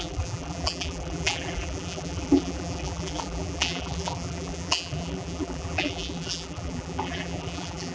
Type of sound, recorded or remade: remade